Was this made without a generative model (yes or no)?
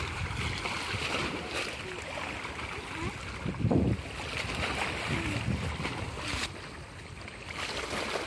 yes